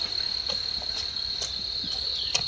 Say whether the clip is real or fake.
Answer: real